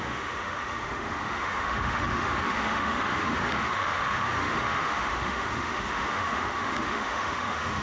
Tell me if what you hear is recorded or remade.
remade